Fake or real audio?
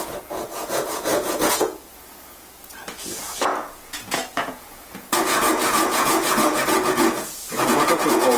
fake